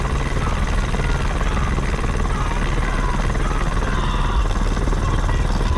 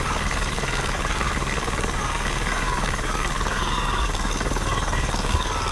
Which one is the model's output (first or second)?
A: second